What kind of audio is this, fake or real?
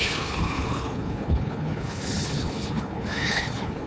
fake